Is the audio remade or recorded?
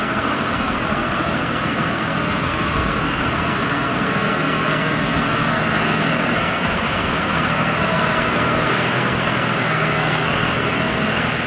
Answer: remade